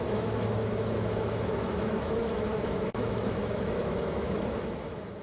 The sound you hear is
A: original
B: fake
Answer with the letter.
B